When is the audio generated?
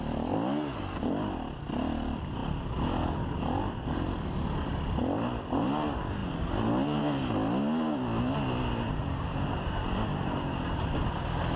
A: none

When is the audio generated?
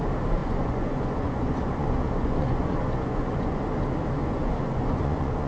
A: 0.4-3.6 (vocoder, Vocos); 4.2-5.5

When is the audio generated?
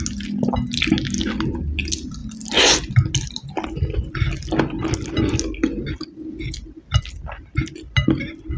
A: none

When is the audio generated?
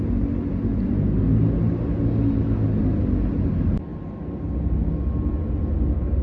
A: none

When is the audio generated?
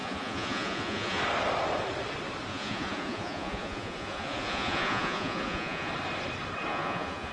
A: 0.0-1.2 (vocoder, Vocos); 2.5-5.9; 6.7-7.3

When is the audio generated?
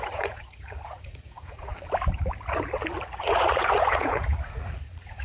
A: 0.0-1.7 (vocoder, Vocos); 3.2-5.2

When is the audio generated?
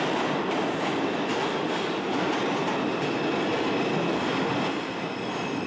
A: none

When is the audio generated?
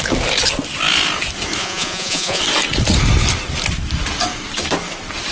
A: 1.6-2.4 (vocoder, Vocos)